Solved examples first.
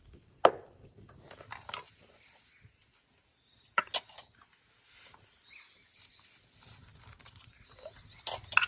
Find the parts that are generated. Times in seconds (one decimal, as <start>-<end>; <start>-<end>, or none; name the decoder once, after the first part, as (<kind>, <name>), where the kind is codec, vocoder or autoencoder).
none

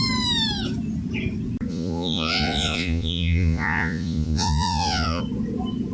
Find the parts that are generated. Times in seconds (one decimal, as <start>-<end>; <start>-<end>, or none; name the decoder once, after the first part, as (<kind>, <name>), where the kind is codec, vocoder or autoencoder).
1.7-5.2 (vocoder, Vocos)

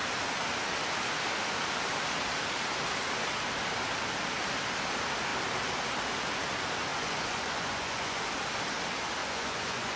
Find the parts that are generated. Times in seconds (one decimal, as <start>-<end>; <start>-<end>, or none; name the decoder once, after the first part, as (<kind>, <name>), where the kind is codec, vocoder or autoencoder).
6.9-8.2 (vocoder, Vocos); 9.2-10.0

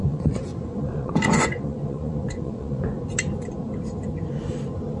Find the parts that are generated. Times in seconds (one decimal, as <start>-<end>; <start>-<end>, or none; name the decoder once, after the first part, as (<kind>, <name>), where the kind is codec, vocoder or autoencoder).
0.0-3.0 (vocoder, Vocos)

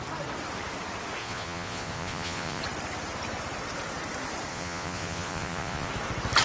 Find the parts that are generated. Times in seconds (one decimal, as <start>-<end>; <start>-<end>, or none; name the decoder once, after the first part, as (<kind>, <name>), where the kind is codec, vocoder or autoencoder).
1.2-2.6 (vocoder, Vocos); 4.5-5.9